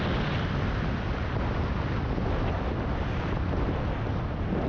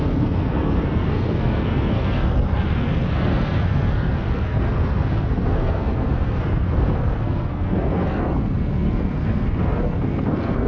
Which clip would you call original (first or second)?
first